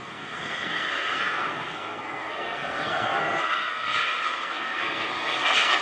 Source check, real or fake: fake